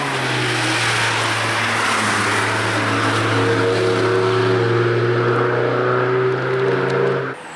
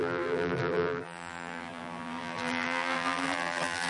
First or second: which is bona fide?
first